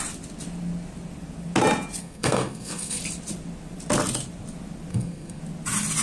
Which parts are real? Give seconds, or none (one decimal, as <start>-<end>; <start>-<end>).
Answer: 0.0-2.0; 3.0-4.9; 5.4-6.0